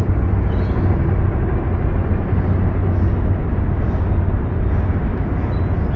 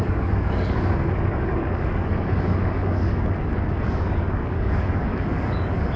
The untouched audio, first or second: first